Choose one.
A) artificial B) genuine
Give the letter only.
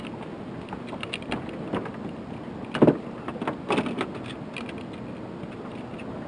B